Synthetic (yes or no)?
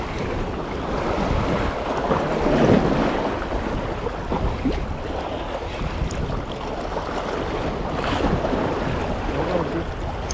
no